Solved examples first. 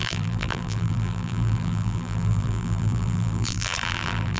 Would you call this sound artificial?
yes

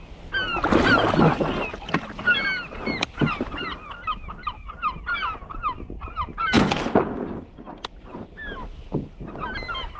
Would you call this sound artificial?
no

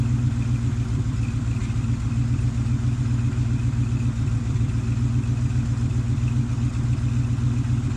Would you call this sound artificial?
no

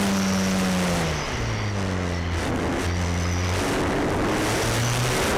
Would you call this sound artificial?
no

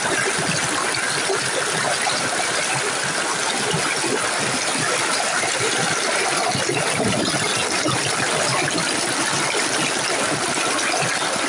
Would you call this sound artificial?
no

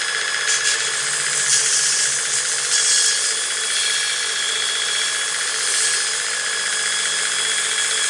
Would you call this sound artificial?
no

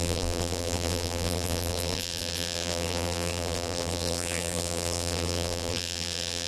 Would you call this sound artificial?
yes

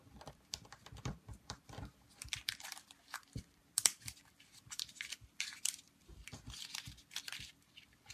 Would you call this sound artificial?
yes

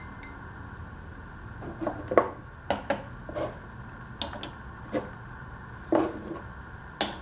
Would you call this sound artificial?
no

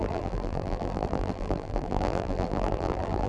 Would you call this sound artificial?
yes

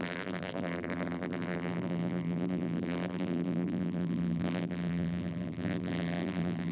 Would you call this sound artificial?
yes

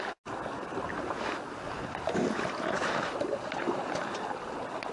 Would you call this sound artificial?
no